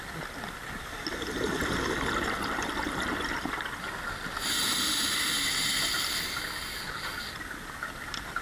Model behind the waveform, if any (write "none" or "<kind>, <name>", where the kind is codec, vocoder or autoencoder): none